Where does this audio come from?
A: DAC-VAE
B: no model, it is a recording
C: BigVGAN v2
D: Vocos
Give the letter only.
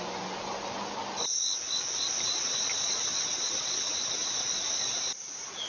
B